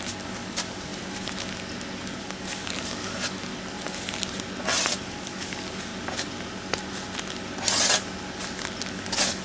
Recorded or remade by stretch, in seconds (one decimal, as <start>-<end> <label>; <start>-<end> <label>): 0.0-0.9 remade; 0.9-2.2 recorded; 2.2-3.5 remade; 3.5-5.0 recorded; 5.0-5.9 remade; 5.9-8.9 recorded; 8.9-9.4 remade